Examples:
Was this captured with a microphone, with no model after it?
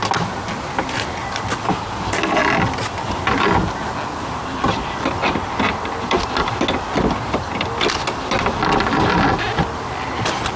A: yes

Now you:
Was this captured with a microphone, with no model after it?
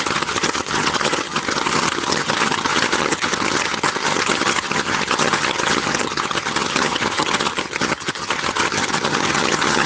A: no